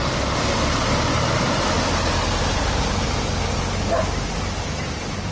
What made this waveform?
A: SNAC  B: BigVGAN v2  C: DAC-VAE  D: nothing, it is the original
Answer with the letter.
D